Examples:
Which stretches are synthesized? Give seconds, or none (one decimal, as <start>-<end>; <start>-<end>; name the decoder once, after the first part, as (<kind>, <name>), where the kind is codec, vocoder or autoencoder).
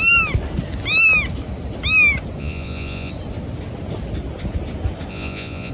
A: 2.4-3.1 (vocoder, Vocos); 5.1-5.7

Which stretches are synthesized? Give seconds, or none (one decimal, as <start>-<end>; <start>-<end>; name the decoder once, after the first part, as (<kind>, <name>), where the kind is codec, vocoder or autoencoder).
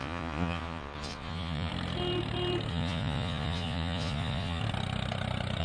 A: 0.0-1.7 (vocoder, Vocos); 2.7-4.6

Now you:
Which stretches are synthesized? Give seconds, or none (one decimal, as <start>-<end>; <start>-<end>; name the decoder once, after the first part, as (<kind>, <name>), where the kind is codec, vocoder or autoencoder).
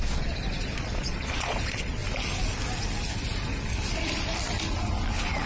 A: 0.0-2.0 (vocoder, Vocos)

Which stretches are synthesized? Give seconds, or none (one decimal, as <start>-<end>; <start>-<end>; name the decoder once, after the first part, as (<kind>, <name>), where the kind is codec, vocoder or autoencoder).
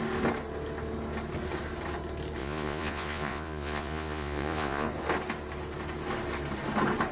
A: 2.4-4.9 (vocoder, Vocos)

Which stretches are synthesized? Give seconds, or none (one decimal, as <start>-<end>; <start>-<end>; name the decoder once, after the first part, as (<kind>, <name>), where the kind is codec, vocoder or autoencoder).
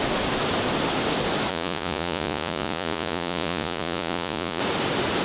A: 1.5-4.6 (vocoder, Vocos)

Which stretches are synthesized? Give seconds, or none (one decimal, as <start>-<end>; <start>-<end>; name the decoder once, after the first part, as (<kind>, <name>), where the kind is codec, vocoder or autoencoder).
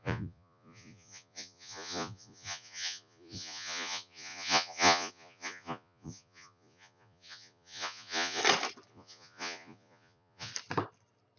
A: 0.0-8.4 (vocoder, Vocos); 8.9-10.5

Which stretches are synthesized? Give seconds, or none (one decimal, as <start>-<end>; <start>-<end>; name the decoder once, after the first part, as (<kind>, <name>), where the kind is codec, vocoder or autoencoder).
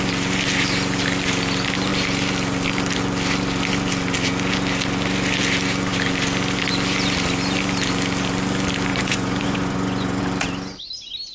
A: 8.9-10.2 (vocoder, Vocos)